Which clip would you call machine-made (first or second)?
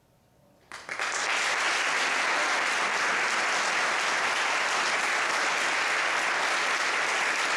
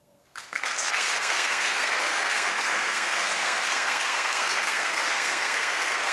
second